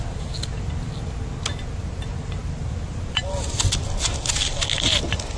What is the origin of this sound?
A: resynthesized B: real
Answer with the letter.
B